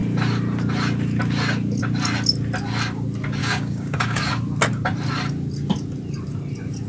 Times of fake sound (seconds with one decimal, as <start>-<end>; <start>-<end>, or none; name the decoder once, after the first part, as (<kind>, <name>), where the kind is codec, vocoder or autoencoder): 3.4-4.3 (codec, DAC)